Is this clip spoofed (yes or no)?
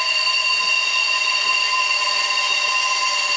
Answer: no